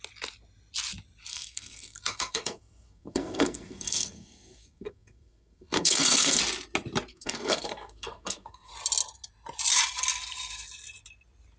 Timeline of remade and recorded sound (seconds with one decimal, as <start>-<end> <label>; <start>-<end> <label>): 0.0-1.3 recorded; 1.3-6.4 remade; 6.4-7.1 recorded; 7.1-8.7 remade; 8.7-11.6 recorded